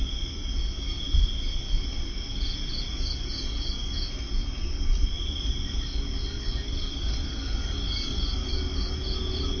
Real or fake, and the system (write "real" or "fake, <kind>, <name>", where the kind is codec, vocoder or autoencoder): real